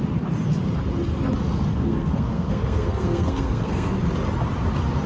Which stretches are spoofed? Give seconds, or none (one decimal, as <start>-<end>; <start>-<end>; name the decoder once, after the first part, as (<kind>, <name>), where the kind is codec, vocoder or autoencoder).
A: 1.7-4.0 (codec, SNAC)